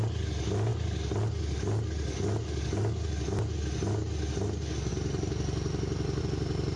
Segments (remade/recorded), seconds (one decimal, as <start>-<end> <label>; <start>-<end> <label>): 0.0-6.8 recorded

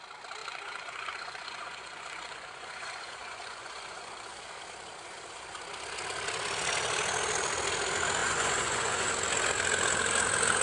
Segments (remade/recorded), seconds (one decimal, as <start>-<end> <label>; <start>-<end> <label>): 0.0-0.4 recorded; 0.4-4.1 remade; 4.1-8.2 recorded; 8.2-9.1 remade; 9.1-10.6 recorded